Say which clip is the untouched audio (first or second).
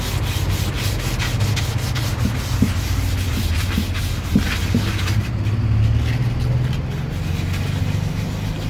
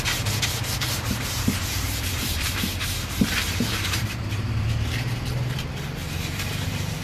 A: first